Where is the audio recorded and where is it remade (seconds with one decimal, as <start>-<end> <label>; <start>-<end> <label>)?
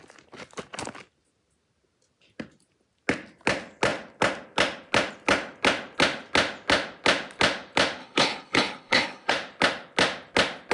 0.0-8.0 recorded; 8.0-9.3 remade; 9.3-10.7 recorded